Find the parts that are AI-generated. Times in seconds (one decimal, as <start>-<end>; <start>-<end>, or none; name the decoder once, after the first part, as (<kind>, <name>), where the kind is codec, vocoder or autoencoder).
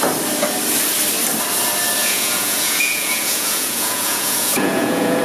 2.0-5.2 (vocoder, Vocos)